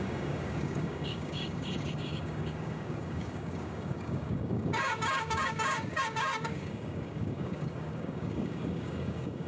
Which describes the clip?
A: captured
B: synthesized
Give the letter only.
B